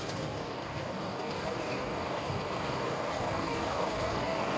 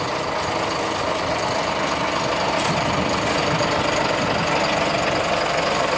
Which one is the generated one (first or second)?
first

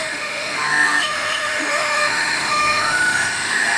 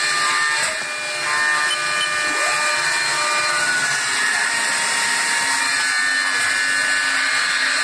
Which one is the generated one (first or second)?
first